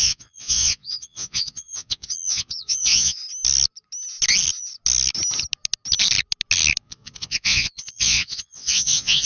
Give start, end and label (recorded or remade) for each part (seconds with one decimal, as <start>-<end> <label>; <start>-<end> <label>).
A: 0.0-3.2 remade; 3.2-6.8 recorded; 6.8-9.3 remade